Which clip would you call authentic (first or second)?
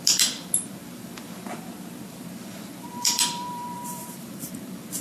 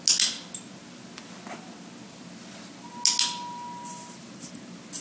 second